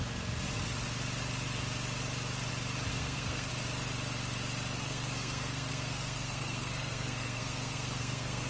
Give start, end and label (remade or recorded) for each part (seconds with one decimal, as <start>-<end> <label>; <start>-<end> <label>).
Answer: 0.0-2.9 recorded; 2.9-3.5 remade; 3.5-4.8 recorded; 4.8-8.5 remade